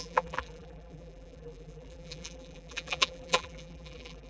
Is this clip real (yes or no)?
no